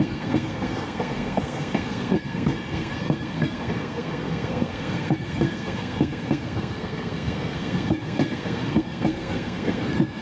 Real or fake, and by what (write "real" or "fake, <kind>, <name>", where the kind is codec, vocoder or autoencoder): fake, codec, SNAC